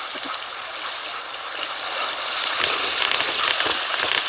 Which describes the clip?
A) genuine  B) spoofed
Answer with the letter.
A